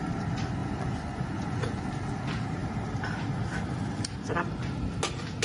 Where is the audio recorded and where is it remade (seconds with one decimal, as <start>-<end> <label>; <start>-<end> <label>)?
0.0-0.6 recorded; 0.6-1.9 remade; 1.9-5.4 recorded